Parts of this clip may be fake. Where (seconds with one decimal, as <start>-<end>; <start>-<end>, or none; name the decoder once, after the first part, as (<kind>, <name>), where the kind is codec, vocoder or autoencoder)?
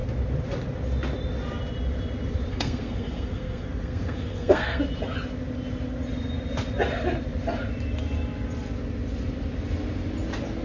2.5-4.8 (codec, SNAC)